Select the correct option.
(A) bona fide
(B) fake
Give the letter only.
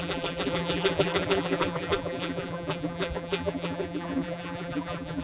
B